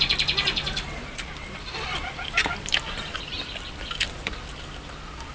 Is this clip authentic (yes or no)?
no